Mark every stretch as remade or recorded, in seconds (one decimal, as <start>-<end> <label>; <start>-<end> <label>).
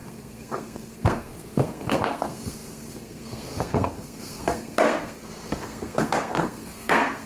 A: 0.0-7.3 remade